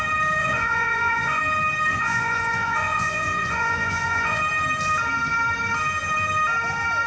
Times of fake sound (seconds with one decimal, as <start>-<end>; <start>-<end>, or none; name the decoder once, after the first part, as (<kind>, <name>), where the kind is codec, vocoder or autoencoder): 0.4-1.4 (vocoder, Vocos); 1.9-4.4